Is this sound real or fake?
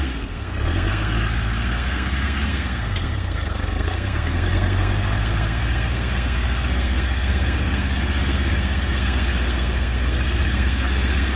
fake